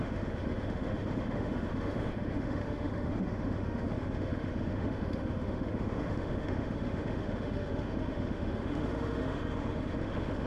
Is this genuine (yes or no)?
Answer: no